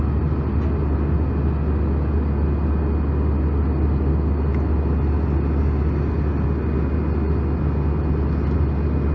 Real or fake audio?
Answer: real